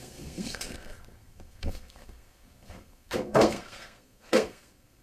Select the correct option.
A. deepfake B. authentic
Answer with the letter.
A